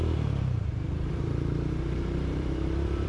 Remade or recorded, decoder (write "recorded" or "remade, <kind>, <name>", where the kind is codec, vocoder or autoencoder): remade, vocoder, BigVGAN v2